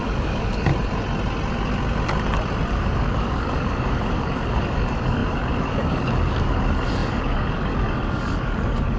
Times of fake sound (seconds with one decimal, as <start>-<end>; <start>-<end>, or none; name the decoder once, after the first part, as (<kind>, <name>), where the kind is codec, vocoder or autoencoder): 0.0-0.7 (codec, DAC); 2.7-9.0